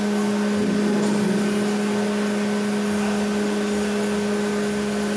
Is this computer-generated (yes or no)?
no